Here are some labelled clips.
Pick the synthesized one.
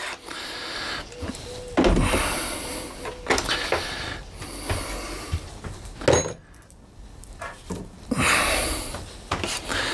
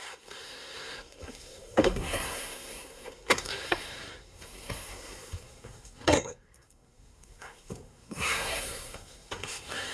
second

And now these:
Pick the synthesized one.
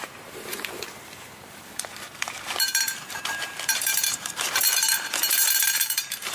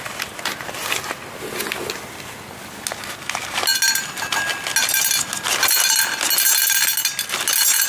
first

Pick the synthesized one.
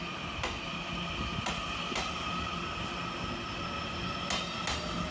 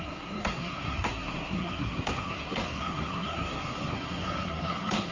second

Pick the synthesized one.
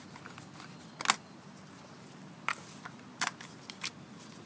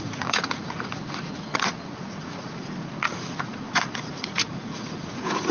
second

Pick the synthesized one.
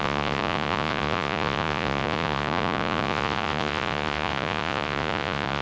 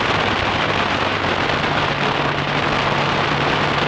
first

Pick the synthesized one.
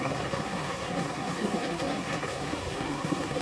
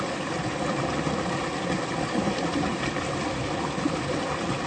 first